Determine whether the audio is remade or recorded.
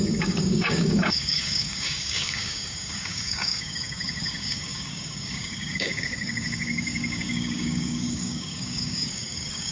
remade